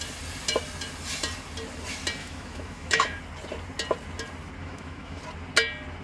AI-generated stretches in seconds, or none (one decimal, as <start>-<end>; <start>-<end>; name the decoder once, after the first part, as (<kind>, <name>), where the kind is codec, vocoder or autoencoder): 2.2-3.2 (autoencoder, DAC-VAE); 4.6-5.2